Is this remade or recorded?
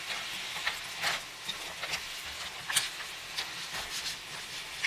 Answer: recorded